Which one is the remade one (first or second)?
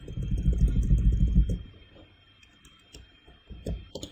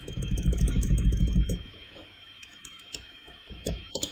second